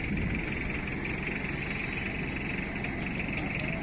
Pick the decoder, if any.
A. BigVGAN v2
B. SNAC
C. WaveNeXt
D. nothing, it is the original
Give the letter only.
D